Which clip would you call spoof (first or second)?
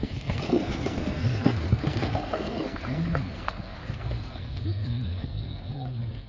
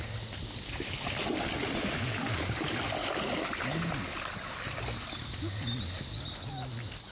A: first